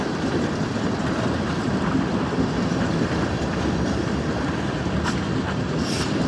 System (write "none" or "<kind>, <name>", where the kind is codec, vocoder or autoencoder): vocoder, BigVGAN v2